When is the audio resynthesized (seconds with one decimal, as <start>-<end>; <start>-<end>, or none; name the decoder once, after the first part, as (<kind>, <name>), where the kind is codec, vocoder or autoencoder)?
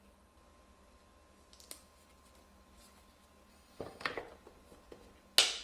3.5-4.2 (codec, DAC)